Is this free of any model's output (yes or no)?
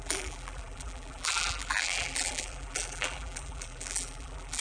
no